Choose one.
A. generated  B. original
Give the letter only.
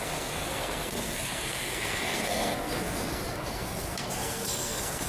A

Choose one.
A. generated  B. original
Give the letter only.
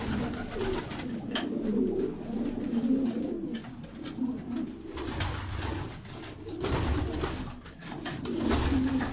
B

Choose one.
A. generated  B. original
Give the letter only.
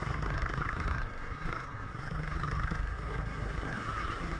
A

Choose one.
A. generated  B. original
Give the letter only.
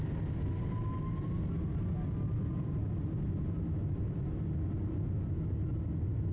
B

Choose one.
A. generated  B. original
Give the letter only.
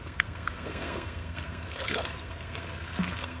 A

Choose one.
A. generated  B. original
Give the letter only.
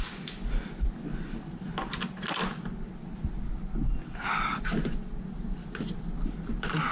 B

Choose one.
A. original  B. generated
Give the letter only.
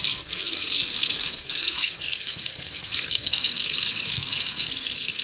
B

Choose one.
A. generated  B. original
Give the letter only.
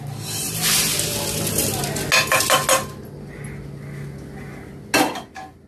B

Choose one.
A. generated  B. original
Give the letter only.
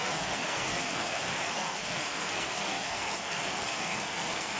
A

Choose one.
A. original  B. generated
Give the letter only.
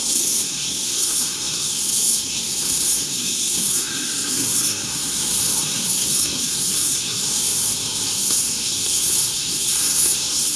B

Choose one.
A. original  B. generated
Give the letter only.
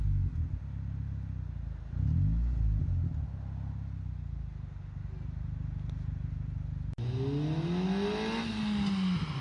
A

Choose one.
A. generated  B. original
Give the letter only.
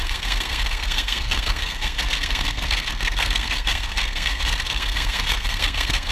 A